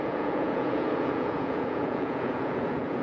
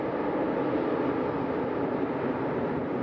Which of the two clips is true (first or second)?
second